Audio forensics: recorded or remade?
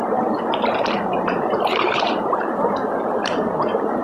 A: remade